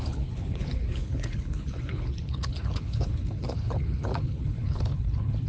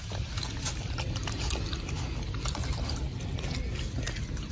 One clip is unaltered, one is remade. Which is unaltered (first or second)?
second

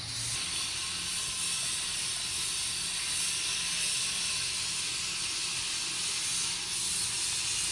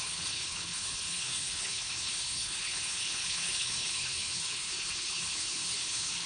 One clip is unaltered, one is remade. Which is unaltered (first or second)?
first